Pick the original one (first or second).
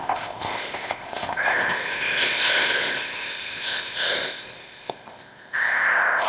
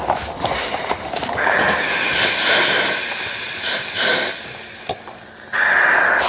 second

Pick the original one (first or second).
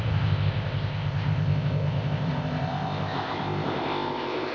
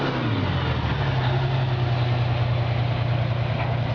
second